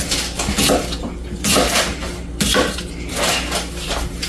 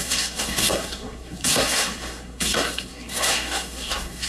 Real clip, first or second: first